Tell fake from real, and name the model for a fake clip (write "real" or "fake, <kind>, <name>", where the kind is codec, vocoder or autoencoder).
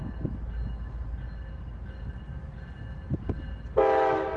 real